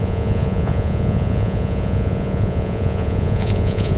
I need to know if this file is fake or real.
fake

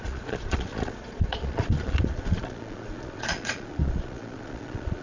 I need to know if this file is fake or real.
fake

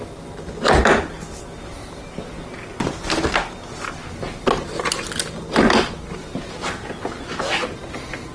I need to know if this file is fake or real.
real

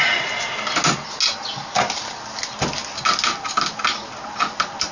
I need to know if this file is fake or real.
real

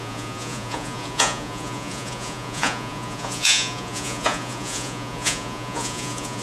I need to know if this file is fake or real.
fake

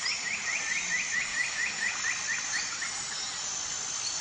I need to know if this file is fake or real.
real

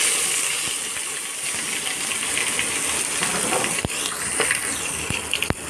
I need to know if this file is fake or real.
real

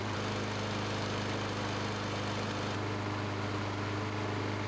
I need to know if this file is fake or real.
real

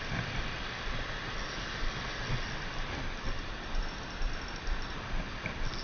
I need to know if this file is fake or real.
real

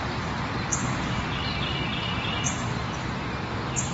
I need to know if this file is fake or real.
real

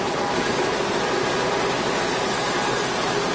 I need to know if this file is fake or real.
real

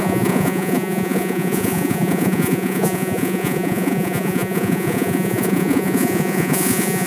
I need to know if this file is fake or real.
fake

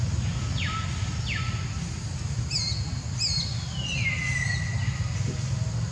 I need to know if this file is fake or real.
real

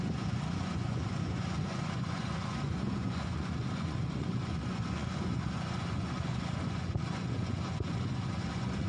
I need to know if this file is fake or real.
fake